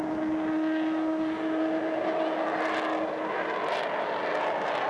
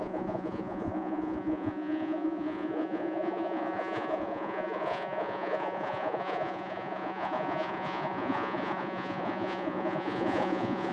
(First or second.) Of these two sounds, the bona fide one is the first